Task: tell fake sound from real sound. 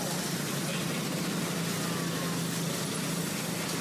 real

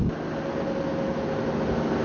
real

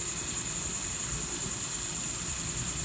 real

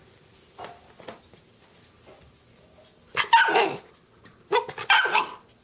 real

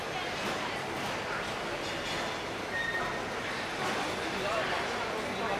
real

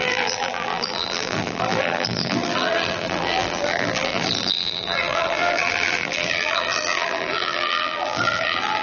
fake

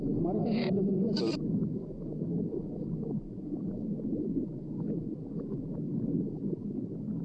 real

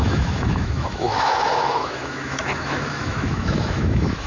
fake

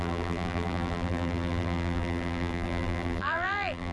fake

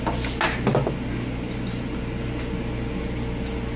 real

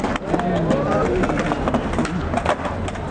real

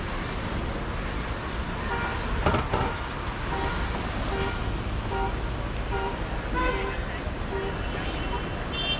real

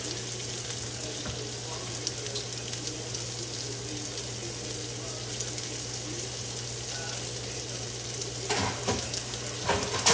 real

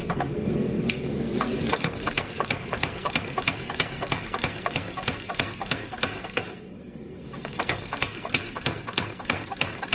fake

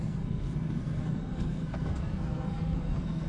fake